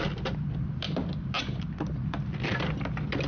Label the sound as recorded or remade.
recorded